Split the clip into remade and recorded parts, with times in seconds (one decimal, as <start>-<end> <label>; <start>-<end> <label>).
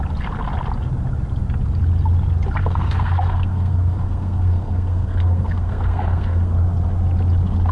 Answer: 0.0-2.6 recorded; 2.6-6.5 remade; 6.5-7.7 recorded